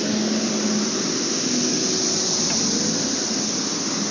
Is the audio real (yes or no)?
yes